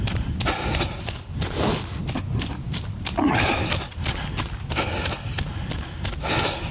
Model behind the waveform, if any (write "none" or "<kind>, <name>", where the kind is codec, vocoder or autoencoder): none